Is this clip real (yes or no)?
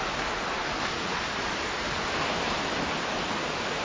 yes